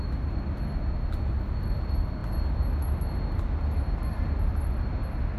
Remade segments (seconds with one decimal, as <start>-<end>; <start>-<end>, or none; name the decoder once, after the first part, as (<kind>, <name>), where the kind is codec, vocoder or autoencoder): none